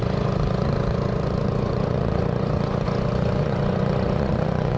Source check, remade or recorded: remade